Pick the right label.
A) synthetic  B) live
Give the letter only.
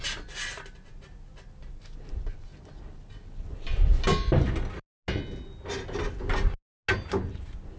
B